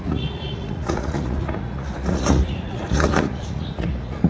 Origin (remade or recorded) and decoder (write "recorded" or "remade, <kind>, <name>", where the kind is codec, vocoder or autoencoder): remade, vocoder, Vocos